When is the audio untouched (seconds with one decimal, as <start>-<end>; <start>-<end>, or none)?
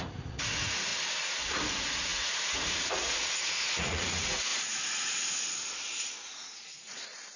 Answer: 0.9-1.7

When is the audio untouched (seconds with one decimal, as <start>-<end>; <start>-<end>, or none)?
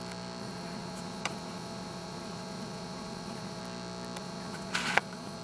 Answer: 0.0-0.4; 3.6-4.2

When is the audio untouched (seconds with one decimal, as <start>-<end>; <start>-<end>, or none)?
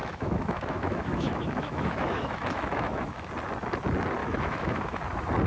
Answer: 3.3-4.2; 5.0-5.5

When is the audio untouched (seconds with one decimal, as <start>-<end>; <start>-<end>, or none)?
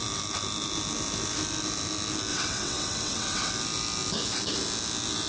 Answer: 0.0-2.3; 3.5-5.3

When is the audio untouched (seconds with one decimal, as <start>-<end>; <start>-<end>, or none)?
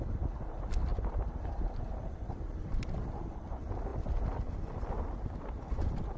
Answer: 0.0-0.9; 2.9-6.2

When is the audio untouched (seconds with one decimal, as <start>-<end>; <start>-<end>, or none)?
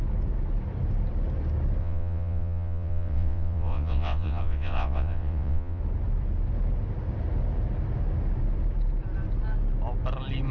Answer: 0.0-1.8; 5.8-10.5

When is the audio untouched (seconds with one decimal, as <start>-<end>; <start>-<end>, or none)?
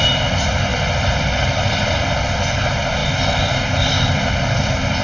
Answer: 0.0-5.0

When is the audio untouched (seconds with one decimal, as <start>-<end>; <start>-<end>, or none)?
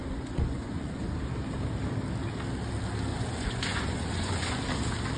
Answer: 1.0-3.1; 4.6-5.2